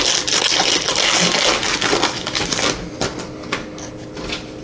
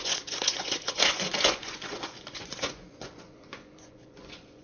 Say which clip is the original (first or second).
first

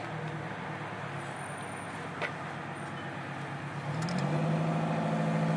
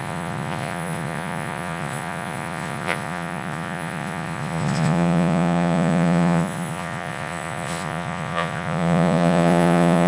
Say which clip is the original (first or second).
first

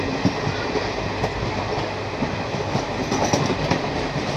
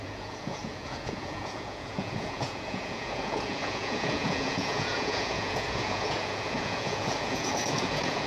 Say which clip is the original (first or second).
first